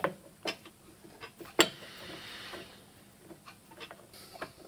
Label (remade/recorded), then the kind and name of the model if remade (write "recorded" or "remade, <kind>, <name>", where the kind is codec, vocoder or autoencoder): recorded